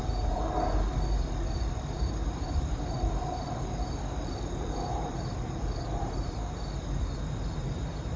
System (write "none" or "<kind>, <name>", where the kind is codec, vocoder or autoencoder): vocoder, BigVGAN v2